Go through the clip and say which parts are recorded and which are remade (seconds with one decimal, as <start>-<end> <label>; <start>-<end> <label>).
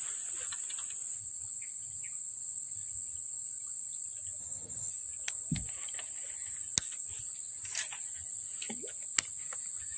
0.0-4.4 recorded; 4.4-4.9 remade; 4.9-10.0 recorded